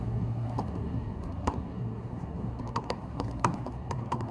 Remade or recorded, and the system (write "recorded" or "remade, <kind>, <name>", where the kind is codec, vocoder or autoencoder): remade, codec, SNAC